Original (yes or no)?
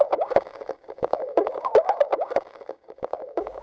no